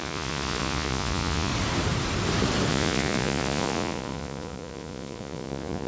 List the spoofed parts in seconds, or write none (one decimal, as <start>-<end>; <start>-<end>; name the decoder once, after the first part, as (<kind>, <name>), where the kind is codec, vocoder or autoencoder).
0.0-1.5 (vocoder, Vocos); 2.7-5.9